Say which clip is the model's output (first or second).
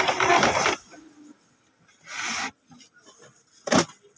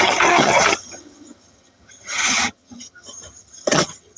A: second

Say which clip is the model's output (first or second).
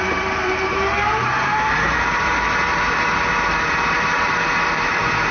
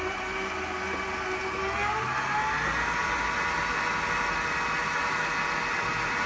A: first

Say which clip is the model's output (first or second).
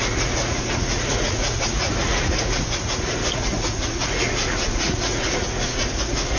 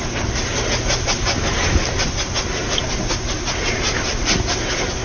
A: first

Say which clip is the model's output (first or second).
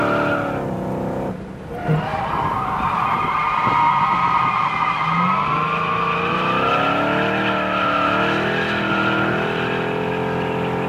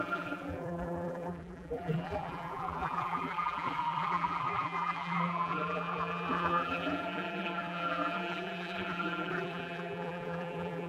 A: second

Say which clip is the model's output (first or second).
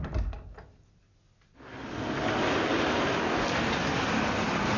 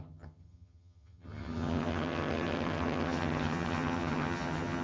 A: second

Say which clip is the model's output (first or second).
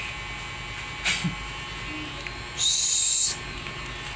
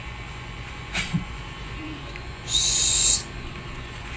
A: second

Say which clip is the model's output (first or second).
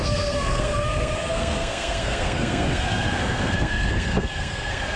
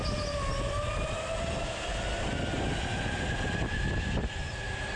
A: first